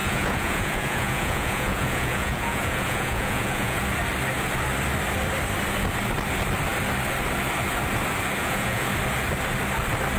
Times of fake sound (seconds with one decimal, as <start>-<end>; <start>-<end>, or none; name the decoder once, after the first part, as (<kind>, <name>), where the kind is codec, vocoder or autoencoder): 0.0-3.8 (vocoder, Vocos); 8.4-8.9